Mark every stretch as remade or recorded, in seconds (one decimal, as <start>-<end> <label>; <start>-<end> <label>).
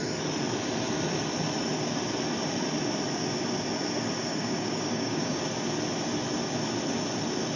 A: 0.0-4.3 recorded; 4.3-5.4 remade; 5.4-7.6 recorded